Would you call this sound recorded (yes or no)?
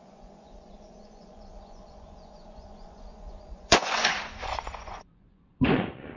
no